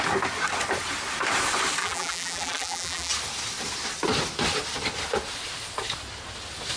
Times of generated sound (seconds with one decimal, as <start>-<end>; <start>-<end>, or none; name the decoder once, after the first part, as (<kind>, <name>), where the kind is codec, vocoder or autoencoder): 1.8-3.1 (vocoder, BigVGAN v2)